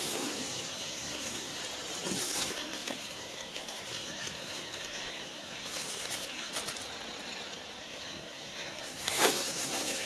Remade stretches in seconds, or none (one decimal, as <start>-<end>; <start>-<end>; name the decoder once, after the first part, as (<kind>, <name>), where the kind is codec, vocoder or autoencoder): 0.0-1.6 (codec, SNAC); 2.2-6.5; 7.8-10.1